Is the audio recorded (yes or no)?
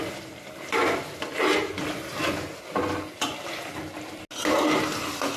yes